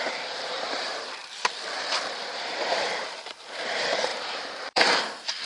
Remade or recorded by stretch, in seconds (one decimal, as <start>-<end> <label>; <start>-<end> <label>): 0.0-5.5 remade